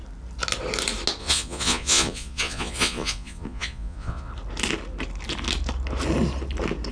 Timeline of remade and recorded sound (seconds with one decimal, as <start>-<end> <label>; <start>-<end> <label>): 0.0-1.2 recorded; 1.2-4.3 remade; 4.3-6.9 recorded